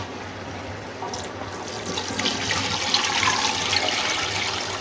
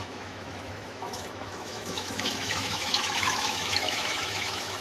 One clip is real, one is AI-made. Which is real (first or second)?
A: first